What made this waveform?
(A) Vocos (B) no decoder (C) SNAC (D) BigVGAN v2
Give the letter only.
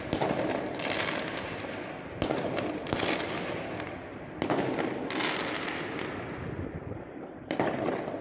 B